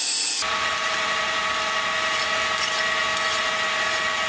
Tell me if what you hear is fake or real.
real